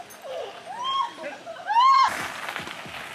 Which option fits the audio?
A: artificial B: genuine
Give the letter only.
B